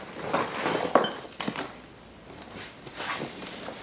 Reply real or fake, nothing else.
fake